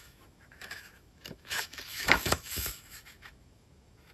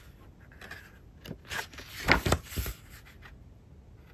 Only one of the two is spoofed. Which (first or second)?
first